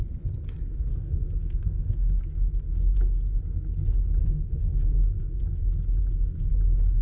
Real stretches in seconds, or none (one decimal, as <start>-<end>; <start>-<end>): 0.0-0.9; 2.2-4.2; 5.4-7.0